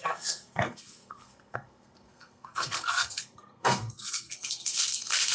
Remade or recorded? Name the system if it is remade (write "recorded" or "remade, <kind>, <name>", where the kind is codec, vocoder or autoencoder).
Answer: remade, codec, SNAC